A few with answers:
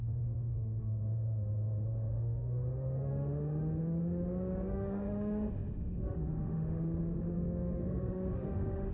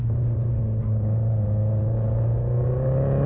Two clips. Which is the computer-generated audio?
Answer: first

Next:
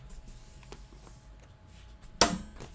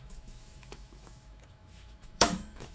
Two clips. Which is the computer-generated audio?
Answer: second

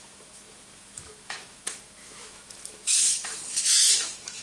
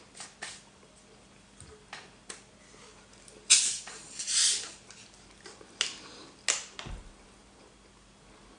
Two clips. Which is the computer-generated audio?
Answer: first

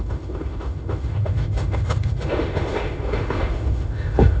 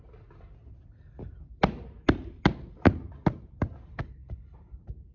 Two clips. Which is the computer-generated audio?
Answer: first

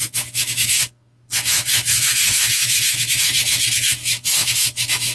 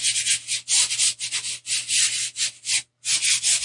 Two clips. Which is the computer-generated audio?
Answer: first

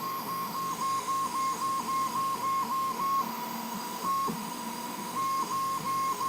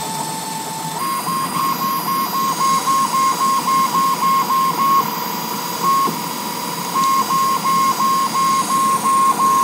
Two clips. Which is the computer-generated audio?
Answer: first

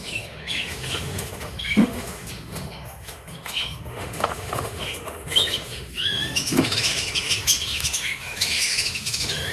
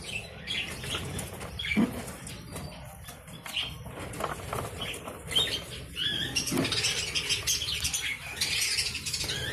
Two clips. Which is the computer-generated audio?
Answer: first